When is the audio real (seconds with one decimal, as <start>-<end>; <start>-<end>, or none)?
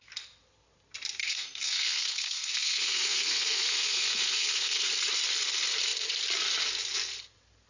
0.0-1.2; 4.9-7.7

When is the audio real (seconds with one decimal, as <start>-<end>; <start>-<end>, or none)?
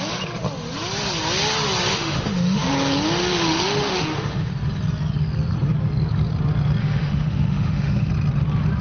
0.0-1.9; 2.7-3.2; 4.5-6.8; 8.1-8.8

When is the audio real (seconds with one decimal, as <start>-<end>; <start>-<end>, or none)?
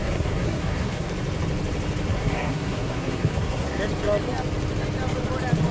1.1-2.1; 3.8-5.7